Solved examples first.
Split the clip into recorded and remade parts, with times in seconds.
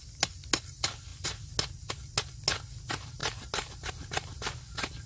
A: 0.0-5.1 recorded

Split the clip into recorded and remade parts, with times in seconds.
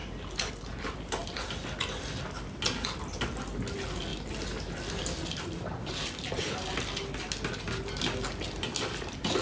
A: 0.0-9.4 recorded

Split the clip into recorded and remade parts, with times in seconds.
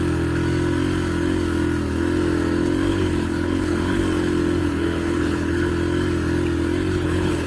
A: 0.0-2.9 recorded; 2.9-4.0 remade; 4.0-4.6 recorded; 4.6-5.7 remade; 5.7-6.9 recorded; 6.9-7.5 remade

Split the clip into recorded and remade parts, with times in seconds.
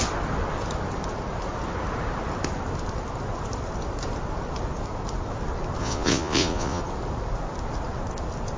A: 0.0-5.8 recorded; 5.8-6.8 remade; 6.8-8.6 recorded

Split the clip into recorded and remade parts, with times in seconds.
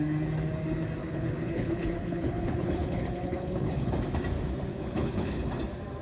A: 0.0-1.0 recorded; 1.0-3.9 remade; 3.9-4.7 recorded; 4.7-5.4 remade; 5.4-6.0 recorded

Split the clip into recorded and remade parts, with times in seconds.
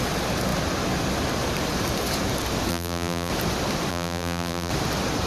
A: 0.0-2.7 recorded; 2.7-3.3 remade; 3.3-3.9 recorded; 3.9-4.7 remade; 4.7-5.3 recorded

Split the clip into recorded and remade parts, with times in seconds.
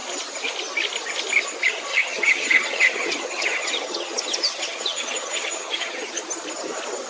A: 0.0-1.9 recorded; 1.9-6.2 remade; 6.2-7.1 recorded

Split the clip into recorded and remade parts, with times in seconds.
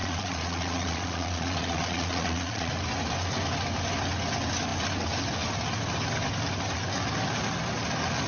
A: 0.0-2.7 remade; 2.7-8.3 recorded